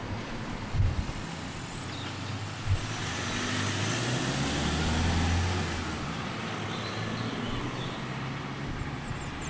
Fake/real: real